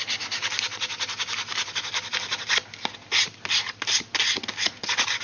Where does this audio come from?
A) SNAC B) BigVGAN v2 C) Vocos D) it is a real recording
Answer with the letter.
D